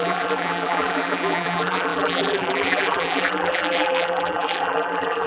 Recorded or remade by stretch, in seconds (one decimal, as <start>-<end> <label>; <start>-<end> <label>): 0.0-5.3 remade